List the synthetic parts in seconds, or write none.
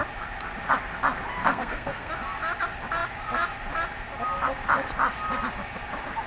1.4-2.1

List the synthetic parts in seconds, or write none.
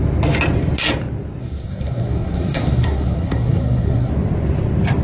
1.4-4.1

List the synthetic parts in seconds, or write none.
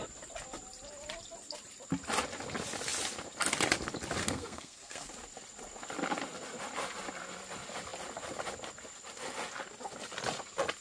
4.2-5.1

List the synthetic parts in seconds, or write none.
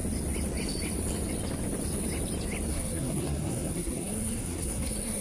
2.7-5.2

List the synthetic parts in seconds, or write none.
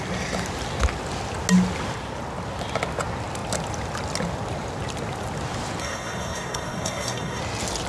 5.8-7.4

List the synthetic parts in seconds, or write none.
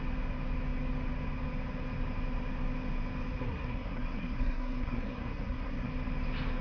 3.4-5.9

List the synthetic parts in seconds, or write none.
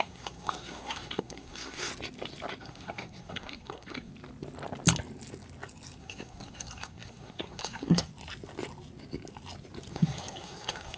0.0-1.9; 2.6-4.1; 6.0-8.1; 9.9-11.0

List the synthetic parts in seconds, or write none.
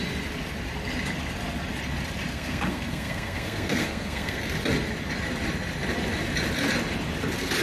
2.3-4.4